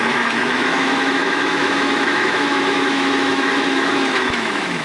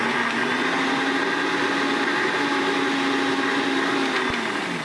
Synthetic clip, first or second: first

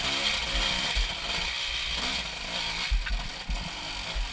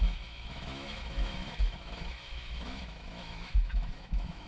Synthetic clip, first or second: second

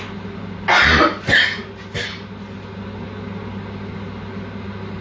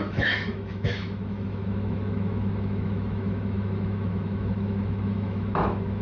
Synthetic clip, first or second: second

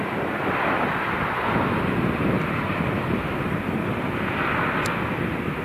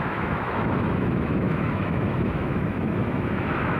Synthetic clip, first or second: second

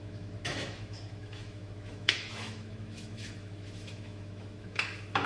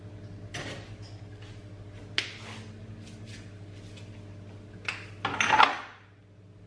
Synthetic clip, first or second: first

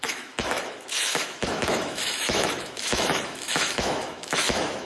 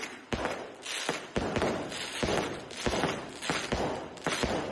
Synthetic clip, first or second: first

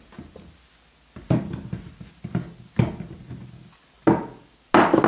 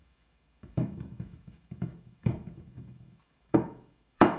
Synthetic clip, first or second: second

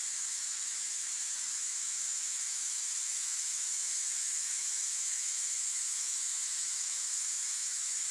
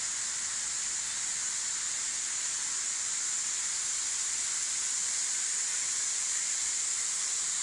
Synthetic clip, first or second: first